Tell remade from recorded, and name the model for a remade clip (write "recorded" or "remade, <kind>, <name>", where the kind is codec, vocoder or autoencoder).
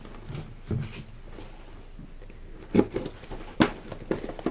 recorded